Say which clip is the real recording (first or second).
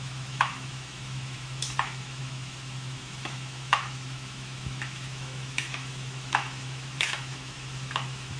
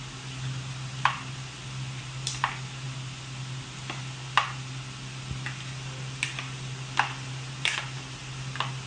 second